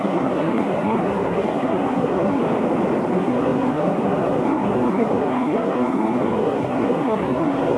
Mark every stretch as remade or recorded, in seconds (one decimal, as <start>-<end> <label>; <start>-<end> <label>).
0.0-2.4 remade; 2.4-3.1 recorded; 3.1-7.8 remade